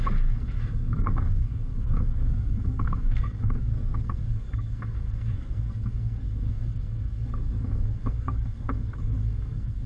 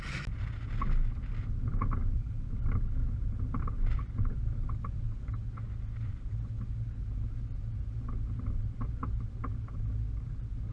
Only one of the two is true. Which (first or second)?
second